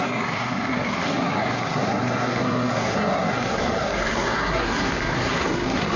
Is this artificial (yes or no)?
yes